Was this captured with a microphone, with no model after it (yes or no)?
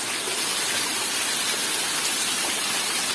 yes